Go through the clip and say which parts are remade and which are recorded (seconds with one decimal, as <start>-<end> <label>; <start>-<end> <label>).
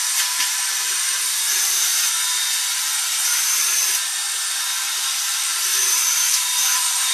0.0-1.9 remade; 1.9-5.2 recorded; 5.2-5.7 remade; 5.7-6.3 recorded; 6.3-7.1 remade